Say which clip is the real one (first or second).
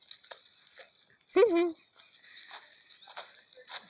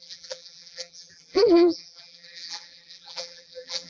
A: first